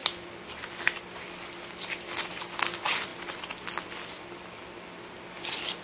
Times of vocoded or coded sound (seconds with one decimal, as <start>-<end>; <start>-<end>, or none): none